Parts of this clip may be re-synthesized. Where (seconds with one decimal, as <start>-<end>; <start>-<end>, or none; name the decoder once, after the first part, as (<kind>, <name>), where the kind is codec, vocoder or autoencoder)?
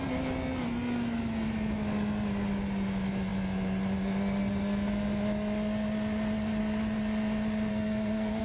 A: 7.7-8.4 (codec, SNAC)